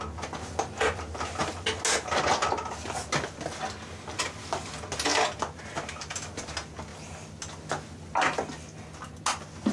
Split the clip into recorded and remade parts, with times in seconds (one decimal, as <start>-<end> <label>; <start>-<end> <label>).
0.0-9.7 recorded